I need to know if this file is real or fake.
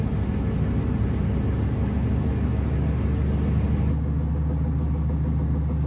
real